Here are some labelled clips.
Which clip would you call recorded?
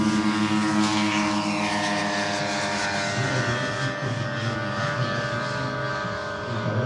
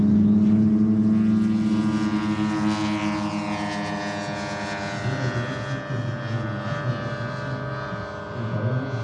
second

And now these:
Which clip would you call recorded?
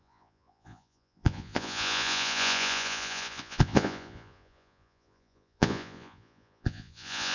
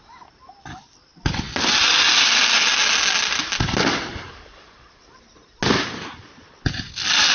second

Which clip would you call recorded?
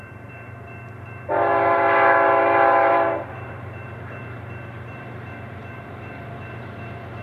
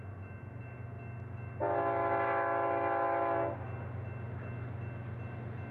second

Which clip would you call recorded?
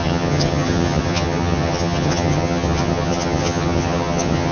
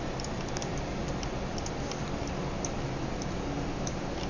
second